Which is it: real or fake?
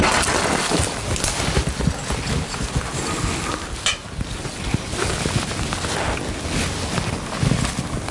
real